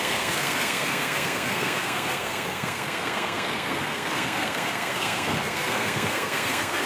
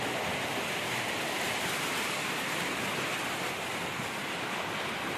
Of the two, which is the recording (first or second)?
second